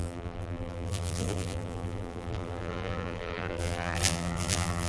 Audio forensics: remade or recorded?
remade